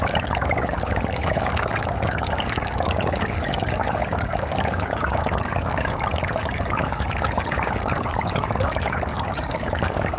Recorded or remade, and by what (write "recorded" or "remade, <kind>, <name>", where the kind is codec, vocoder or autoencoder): remade, codec, DAC